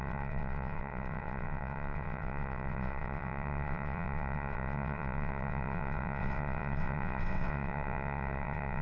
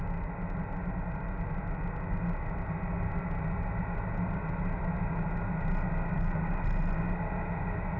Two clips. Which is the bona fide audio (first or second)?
second